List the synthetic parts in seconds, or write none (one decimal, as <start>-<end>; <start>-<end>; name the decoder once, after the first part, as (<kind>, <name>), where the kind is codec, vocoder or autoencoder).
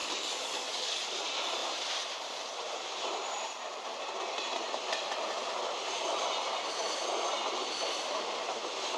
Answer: 0.0-1.0 (codec, DAC)